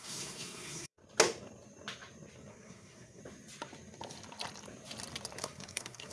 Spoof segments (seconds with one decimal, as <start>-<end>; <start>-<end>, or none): 0.0-1.0; 2.5-3.2; 5.4-6.1